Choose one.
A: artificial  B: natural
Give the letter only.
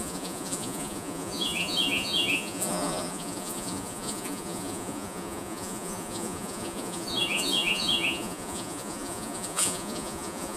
A